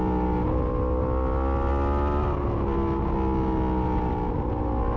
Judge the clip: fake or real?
real